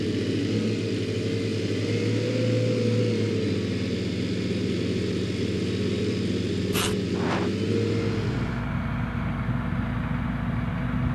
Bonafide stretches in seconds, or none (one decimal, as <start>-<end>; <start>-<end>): 0.0-11.1